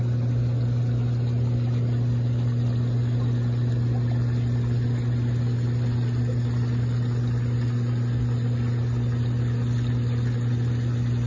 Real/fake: real